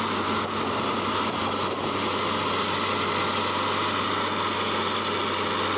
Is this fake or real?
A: real